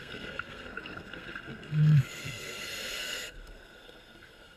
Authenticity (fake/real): fake